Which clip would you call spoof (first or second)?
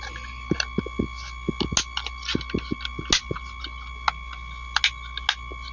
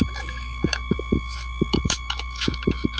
second